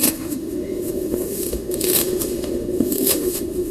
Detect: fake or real fake